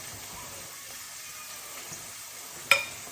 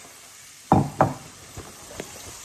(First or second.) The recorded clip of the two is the first